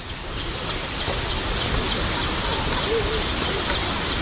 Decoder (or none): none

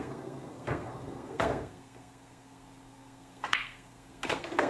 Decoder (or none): codec, SNAC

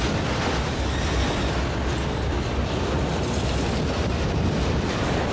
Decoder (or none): none